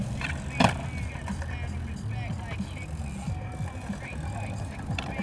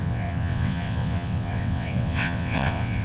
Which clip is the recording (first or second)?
first